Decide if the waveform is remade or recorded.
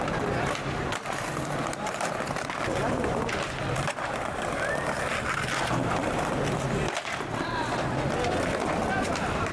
recorded